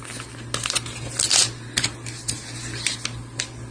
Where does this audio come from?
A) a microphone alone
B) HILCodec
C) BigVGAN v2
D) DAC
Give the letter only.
A